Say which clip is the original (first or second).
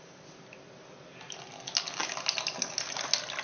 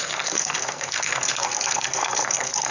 first